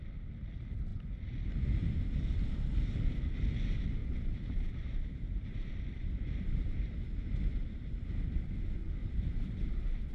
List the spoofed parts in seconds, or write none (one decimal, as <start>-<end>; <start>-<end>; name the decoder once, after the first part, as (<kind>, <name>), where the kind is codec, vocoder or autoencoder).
4.0-5.7 (vocoder, BigVGAN v2); 9.0-10.1